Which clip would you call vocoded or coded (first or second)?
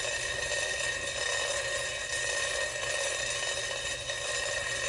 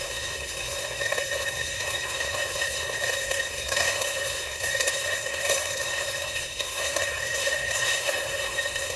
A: second